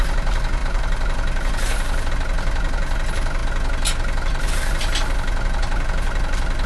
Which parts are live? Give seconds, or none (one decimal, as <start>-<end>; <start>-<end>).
0.0-0.6; 2.1-6.7

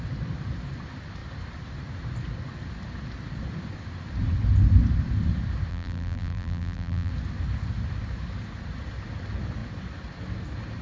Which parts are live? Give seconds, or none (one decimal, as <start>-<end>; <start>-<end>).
0.0-5.7; 7.1-10.8

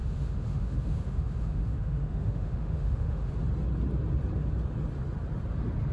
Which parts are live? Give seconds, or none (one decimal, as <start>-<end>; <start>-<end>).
3.3-5.9

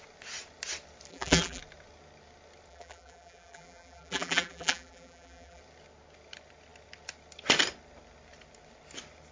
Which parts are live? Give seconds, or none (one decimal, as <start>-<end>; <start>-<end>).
0.0-1.1; 1.6-2.7; 5.6-9.3

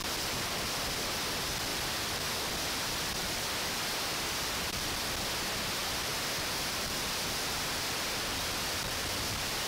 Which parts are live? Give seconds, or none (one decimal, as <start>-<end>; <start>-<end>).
1.0-1.7; 5.0-5.8

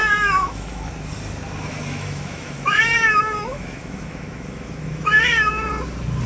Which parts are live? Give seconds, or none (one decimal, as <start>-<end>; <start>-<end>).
0.9-1.9; 5.7-6.3

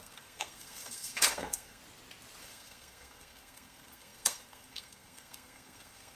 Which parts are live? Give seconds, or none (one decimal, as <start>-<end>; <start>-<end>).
1.8-2.4